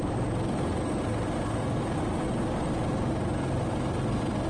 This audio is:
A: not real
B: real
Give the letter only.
B